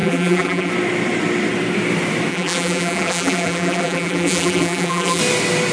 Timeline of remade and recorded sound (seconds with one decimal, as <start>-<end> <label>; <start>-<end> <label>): 0.0-0.7 remade; 0.7-2.3 recorded; 2.3-5.2 remade; 5.2-5.7 recorded